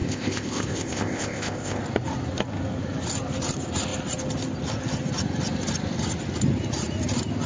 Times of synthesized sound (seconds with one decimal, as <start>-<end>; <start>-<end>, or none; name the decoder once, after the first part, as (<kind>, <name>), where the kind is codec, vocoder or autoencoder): 0.0-1.8 (codec, ZipCodec)